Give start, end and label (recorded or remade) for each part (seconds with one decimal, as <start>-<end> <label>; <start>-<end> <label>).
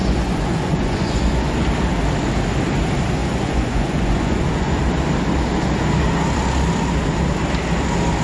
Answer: 0.0-1.5 remade; 1.5-3.2 recorded; 3.2-4.8 remade; 4.8-8.2 recorded